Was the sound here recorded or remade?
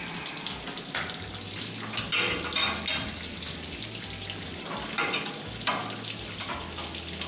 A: recorded